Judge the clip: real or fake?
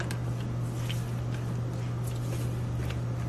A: real